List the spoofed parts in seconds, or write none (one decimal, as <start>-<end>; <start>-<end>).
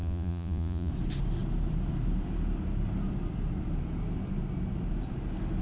0.0-0.9